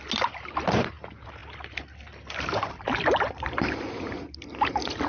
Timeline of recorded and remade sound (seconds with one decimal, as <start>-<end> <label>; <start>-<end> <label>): 0.0-1.4 recorded; 1.4-4.5 remade; 4.5-5.1 recorded